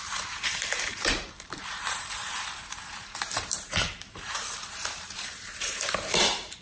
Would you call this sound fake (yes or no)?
yes